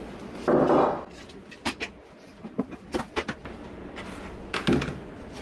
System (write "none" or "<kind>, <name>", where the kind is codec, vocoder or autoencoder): none